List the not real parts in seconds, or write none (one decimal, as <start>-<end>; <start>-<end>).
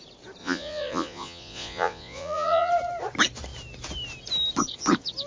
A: 0.4-2.7